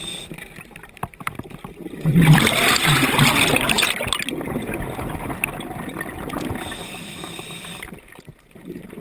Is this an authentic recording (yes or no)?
yes